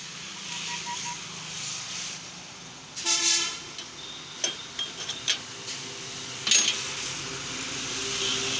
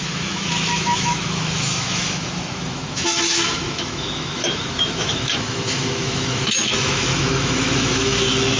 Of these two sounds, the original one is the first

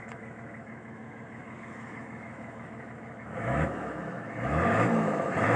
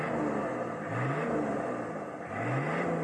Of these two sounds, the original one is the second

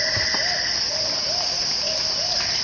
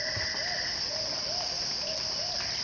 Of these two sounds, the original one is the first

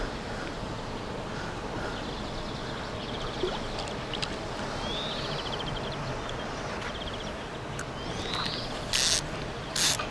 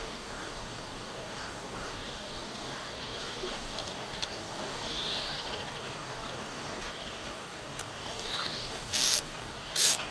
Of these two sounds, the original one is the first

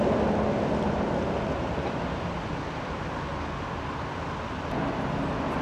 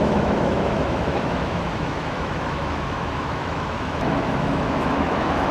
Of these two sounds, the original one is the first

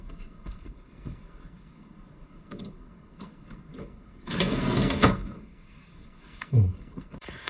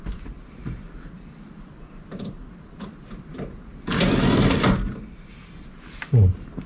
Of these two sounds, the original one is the second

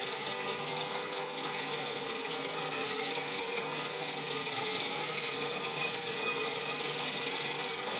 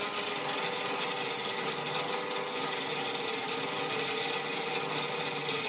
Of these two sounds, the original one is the second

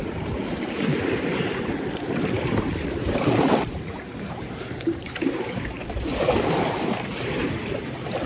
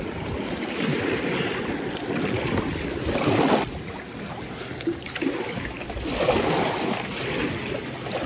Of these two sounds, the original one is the second